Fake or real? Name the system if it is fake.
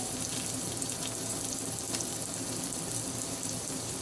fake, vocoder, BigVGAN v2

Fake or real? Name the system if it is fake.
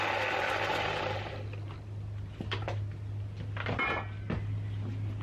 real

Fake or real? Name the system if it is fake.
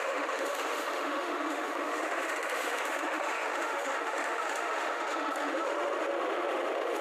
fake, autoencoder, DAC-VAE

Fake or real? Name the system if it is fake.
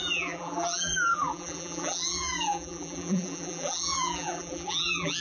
fake, vocoder, BigVGAN v2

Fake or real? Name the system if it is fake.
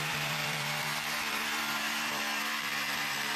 fake, vocoder, BigVGAN v2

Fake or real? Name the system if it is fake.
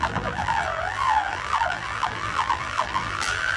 fake, vocoder, BigVGAN v2